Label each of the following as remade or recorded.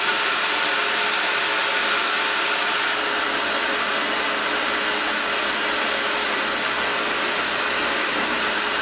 recorded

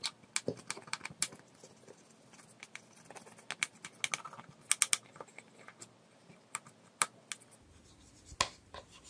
recorded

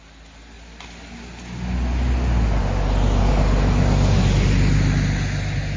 recorded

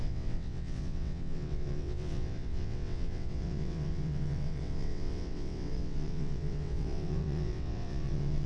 remade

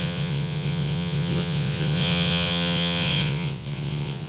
remade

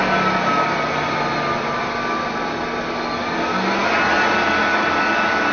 recorded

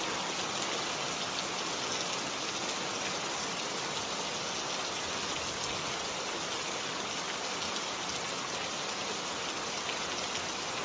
recorded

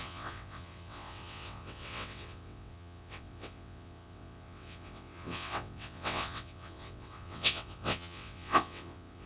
remade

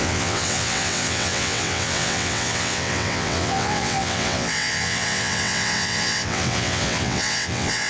remade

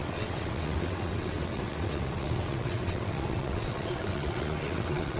remade